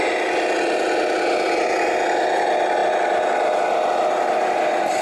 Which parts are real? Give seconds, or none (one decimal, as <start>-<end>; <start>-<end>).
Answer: none